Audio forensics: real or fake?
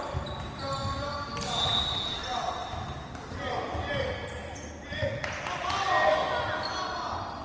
real